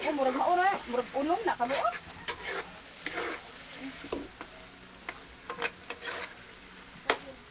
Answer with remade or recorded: recorded